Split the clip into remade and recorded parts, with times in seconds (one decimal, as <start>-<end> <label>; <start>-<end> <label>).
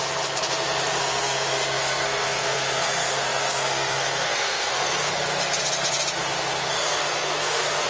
0.0-1.0 recorded; 1.0-5.1 remade; 5.1-6.7 recorded; 6.7-7.9 remade